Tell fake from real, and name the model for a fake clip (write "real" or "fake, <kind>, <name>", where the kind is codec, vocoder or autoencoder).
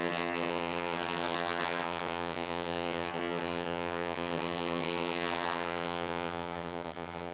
fake, vocoder, HiFi-GAN